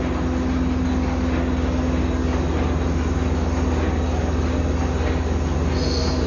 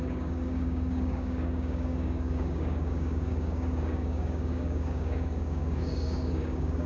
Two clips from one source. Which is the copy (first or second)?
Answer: second